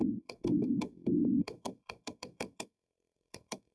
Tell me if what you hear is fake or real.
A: fake